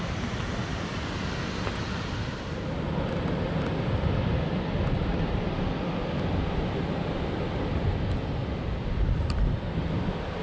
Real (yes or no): yes